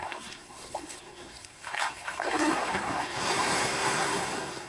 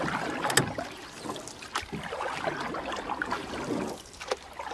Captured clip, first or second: second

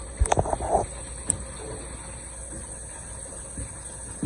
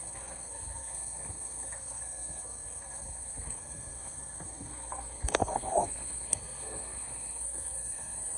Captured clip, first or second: first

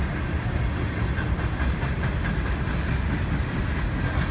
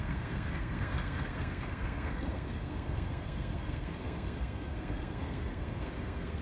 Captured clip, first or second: first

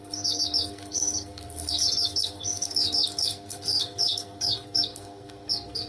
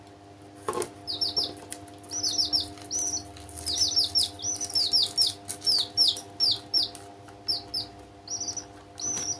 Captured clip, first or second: second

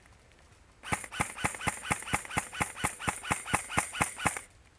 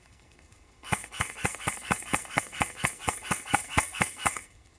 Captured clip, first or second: first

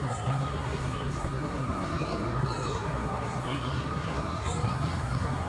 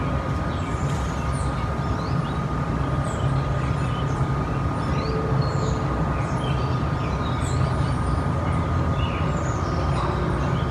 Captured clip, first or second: second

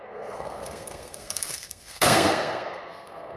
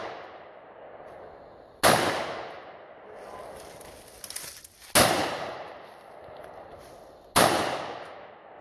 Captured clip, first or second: second